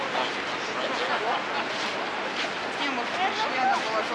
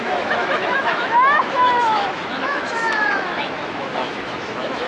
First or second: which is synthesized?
second